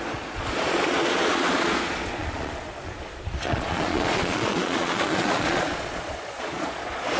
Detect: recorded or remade remade